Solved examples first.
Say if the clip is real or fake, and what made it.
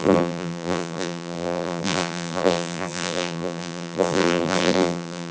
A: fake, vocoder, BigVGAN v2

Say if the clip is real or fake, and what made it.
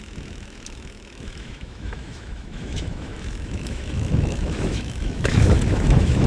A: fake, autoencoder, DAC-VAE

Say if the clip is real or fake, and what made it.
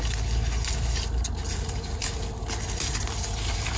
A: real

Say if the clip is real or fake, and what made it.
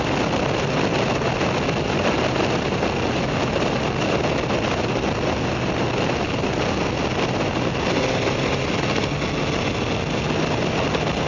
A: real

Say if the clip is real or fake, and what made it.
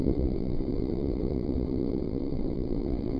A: fake, vocoder, WaveNeXt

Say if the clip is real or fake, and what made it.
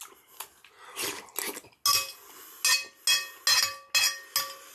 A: real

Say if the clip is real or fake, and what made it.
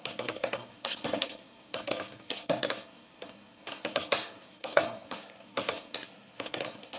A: fake, codec, SNAC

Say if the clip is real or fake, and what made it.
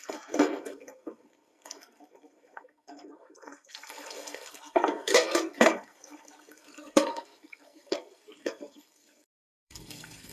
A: fake, codec, SNAC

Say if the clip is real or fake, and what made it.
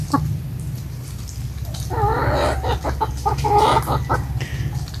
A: real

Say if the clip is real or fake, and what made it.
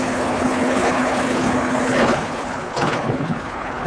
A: fake, codec, HILCodec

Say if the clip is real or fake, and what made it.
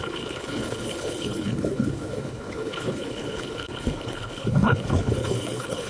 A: fake, codec, HILCodec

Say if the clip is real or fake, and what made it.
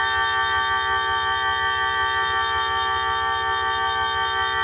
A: real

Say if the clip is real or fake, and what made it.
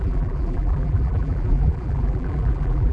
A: fake, vocoder, BigVGAN v2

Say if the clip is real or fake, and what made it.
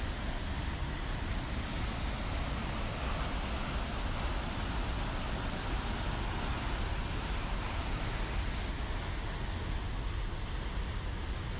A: real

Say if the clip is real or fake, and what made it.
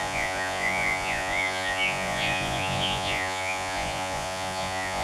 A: fake, vocoder, Vocos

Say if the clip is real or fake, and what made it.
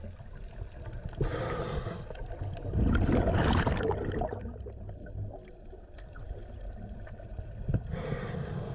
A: real